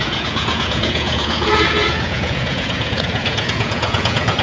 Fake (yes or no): yes